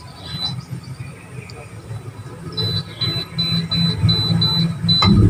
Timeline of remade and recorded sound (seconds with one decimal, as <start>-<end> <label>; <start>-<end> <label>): 0.0-5.3 recorded